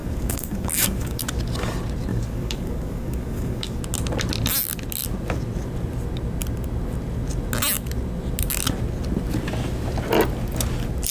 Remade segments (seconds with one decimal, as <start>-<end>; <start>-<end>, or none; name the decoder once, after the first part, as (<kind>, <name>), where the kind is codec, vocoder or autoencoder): 0.0-1.2 (codec, DAC); 2.1-3.8